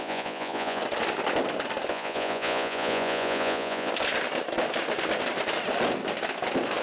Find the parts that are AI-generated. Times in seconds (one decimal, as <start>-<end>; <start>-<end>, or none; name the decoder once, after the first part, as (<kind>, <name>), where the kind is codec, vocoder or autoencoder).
0.0-0.8 (vocoder, Vocos); 1.9-3.9